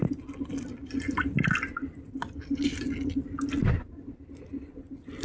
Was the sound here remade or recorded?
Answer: recorded